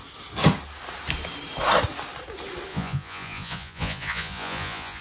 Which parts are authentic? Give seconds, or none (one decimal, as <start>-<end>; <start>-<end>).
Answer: 0.0-2.7